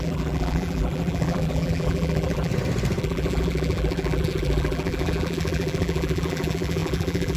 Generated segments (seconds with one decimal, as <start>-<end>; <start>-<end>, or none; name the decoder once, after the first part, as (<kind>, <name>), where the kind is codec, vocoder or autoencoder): 0.0-2.5 (vocoder, BigVGAN v2); 3.0-7.4

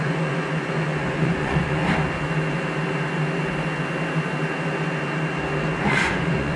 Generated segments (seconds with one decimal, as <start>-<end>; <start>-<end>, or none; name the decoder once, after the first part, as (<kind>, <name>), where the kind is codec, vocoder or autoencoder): 0.0-1.8 (vocoder, Vocos); 5.8-6.6

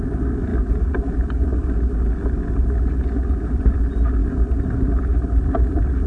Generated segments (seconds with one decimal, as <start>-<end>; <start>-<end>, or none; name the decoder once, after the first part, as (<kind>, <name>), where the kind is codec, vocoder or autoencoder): none

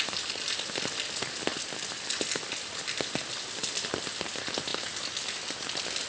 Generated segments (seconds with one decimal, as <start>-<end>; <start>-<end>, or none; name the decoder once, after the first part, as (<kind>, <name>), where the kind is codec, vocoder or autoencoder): none

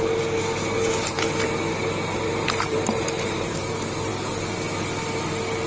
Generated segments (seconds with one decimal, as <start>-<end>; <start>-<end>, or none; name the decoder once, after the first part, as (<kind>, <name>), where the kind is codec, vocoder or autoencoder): 2.1-3.6 (vocoder, BigVGAN v2)

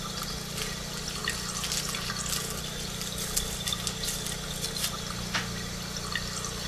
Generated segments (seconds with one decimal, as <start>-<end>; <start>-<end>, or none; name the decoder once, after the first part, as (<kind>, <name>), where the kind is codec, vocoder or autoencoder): none

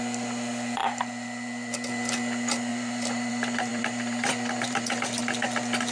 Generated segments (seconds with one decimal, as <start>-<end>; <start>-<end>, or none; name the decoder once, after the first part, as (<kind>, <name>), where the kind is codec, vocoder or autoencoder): 0.8-1.9 (vocoder, BigVGAN v2); 2.7-3.3; 3.7-4.8